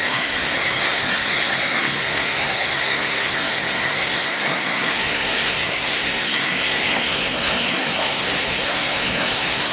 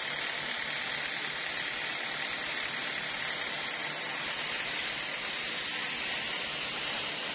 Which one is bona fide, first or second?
second